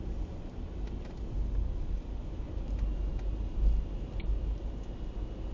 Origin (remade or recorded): recorded